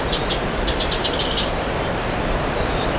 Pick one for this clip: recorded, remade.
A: recorded